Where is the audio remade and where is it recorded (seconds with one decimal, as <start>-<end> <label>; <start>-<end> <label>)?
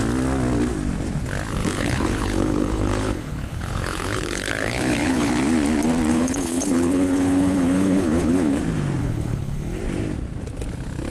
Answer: 0.0-1.6 recorded; 1.6-5.3 remade; 5.3-6.1 recorded; 6.1-8.6 remade; 8.6-9.0 recorded; 9.0-9.8 remade; 9.8-11.1 recorded